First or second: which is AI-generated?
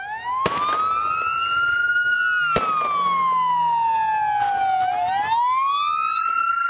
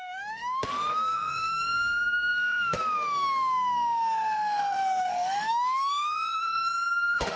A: second